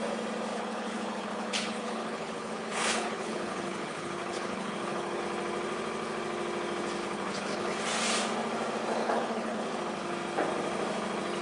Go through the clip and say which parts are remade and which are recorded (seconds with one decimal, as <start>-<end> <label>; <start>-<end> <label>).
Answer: 0.0-0.5 recorded; 0.5-5.2 remade; 5.2-7.0 recorded; 7.0-7.8 remade; 7.8-9.0 recorded; 9.0-9.6 remade; 9.6-11.4 recorded